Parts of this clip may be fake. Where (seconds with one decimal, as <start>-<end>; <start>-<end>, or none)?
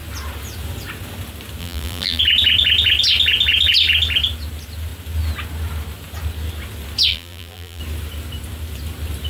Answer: 1.6-2.2; 7.1-7.8